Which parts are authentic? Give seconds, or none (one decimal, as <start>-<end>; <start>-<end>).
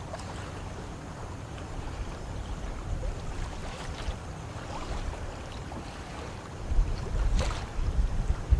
3.6-4.9